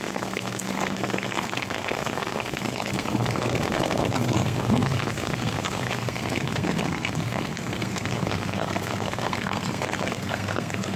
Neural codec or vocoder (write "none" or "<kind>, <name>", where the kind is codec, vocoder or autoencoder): codec, SNAC